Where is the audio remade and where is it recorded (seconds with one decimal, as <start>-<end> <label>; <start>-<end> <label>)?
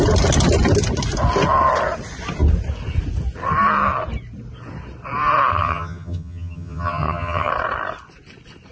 0.0-5.5 recorded; 5.5-7.5 remade; 7.5-8.7 recorded